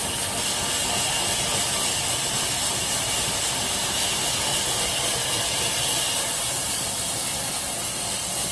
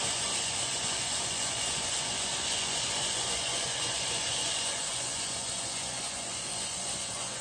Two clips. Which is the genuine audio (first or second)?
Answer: first